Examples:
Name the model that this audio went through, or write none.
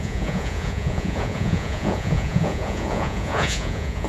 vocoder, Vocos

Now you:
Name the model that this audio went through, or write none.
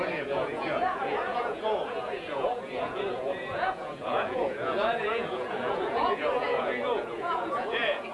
vocoder, Vocos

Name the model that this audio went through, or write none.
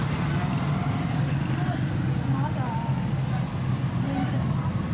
none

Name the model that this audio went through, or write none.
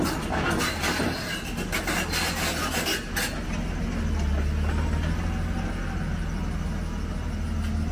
none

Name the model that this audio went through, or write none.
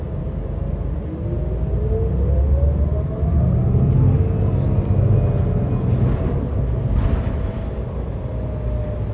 none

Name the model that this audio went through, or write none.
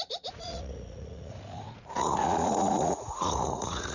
vocoder, Vocos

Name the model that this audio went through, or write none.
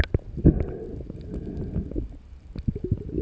none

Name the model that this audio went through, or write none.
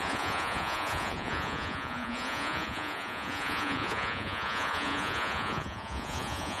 vocoder, Vocos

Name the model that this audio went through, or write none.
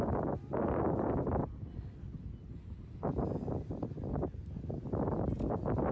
none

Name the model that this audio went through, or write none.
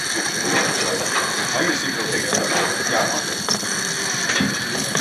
none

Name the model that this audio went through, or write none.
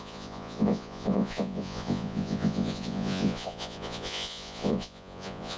vocoder, Vocos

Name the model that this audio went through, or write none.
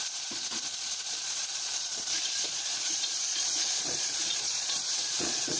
vocoder, Vocos